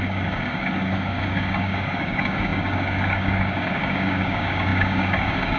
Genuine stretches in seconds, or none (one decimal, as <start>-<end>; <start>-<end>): none

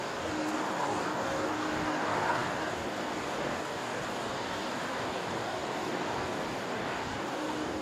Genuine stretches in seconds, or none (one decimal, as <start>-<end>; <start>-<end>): none

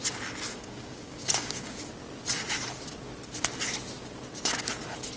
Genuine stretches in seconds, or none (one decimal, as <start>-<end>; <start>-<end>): 0.0-0.5; 1.9-5.2

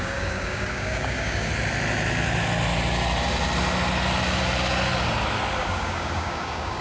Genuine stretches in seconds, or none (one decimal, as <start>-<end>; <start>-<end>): 1.5-5.6

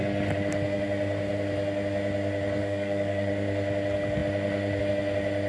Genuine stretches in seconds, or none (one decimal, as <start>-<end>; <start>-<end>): 0.0-2.6; 3.3-5.5